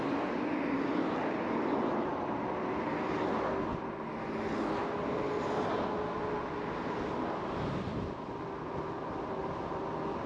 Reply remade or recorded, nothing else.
recorded